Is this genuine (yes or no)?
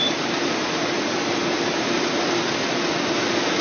yes